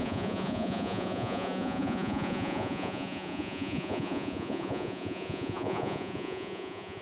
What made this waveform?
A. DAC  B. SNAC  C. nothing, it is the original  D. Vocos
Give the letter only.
D